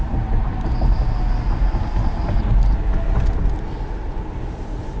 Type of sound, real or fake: real